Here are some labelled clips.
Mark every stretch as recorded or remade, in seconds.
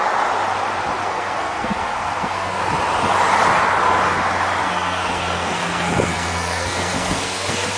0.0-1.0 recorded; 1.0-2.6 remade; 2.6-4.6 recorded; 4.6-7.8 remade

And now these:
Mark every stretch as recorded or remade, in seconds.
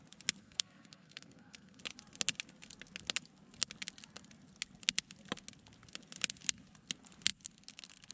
0.0-0.4 recorded; 0.4-1.8 remade; 1.8-8.1 recorded